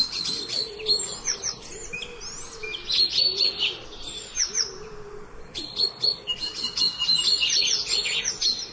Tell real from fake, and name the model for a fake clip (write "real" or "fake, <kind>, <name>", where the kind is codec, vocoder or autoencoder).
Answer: real